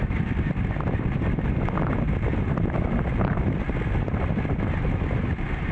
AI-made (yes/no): no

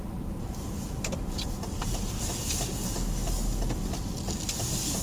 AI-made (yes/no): no